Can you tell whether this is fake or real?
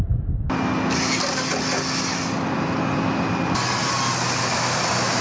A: real